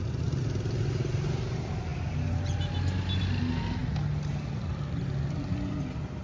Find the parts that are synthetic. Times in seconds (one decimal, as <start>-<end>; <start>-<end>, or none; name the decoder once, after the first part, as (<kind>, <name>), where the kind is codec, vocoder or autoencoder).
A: none